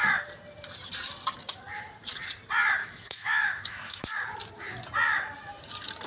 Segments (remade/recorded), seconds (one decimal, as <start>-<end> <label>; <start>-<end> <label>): 0.0-2.8 recorded; 2.8-4.1 remade; 4.1-6.1 recorded

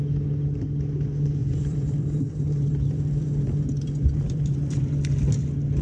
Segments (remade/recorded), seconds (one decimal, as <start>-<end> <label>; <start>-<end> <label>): 0.0-1.4 recorded; 1.4-4.9 remade; 4.9-5.8 recorded

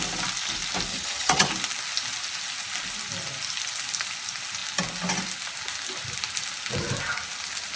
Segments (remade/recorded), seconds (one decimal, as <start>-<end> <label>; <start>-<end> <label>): 0.0-0.9 recorded; 0.9-1.5 remade; 1.5-7.8 recorded

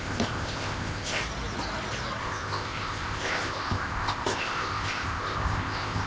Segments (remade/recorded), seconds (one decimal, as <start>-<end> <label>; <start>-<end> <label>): 0.0-1.2 remade; 1.2-2.2 recorded; 2.2-6.1 remade

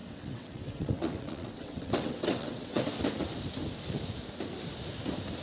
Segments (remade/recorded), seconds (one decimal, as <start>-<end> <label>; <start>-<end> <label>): 0.0-2.9 remade; 2.9-5.4 recorded

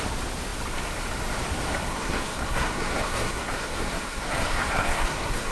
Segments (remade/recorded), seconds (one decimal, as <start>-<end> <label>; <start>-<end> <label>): 0.0-1.9 recorded; 1.9-5.5 remade

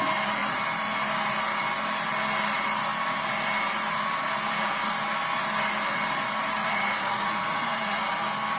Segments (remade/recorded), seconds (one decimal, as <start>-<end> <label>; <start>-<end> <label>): 0.0-6.6 recorded; 6.6-8.0 remade; 8.0-8.6 recorded